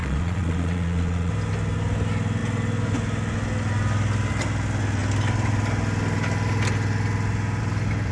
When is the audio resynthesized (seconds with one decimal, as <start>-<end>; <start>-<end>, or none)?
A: 0.0-1.3